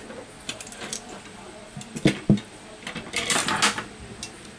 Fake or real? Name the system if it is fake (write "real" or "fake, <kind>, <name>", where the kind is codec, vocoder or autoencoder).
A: real